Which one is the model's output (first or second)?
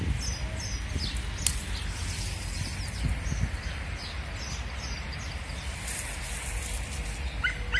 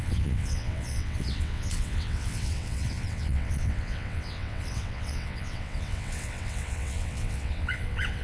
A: second